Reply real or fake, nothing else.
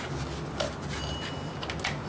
real